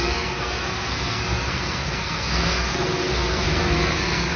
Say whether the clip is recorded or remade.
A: remade